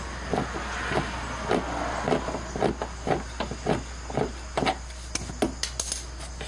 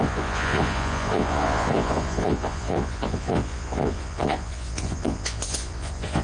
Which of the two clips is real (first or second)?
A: first